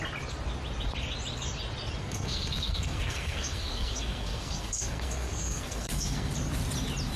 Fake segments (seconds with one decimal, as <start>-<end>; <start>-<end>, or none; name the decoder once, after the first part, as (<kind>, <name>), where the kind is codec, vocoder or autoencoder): 2.0-6.3 (codec, SNAC)